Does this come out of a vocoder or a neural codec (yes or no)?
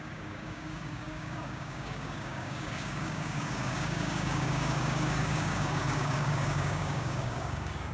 yes